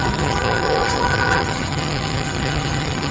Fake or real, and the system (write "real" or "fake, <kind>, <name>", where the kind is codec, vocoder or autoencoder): fake, vocoder, HiFi-GAN